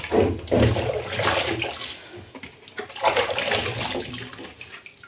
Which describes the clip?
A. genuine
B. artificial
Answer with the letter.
A